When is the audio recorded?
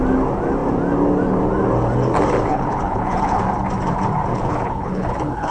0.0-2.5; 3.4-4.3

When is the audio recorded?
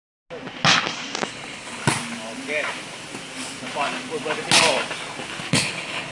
0.0-1.3; 1.8-5.5